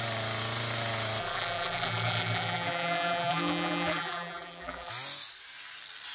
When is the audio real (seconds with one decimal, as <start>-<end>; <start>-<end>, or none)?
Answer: 0.0-1.2; 4.9-6.1